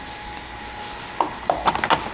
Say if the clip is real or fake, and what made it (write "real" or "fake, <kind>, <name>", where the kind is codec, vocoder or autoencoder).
real